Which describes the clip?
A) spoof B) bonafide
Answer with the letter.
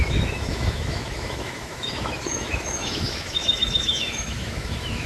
A